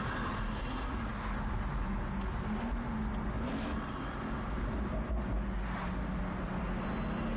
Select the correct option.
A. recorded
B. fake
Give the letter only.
A